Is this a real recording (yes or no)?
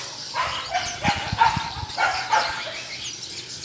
yes